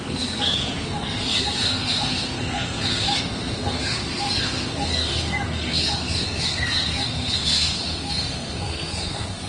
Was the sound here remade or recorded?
remade